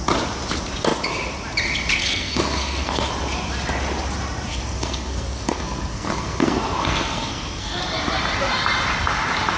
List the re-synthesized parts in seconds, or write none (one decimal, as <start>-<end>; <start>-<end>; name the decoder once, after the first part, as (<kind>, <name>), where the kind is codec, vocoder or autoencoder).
2.0-3.1 (codec, SNAC); 4.5-7.8